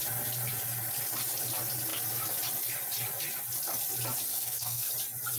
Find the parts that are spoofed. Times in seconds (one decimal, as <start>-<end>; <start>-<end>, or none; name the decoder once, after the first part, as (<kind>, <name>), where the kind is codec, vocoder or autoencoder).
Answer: 4.3-4.9 (codec, SNAC)